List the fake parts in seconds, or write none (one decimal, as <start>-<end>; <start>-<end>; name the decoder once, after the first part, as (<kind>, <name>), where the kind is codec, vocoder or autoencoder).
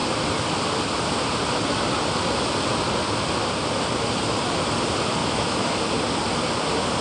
5.2-5.8 (autoencoder, DAC-VAE)